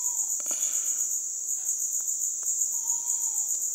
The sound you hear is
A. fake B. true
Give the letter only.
B